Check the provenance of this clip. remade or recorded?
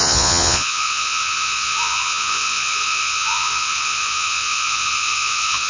remade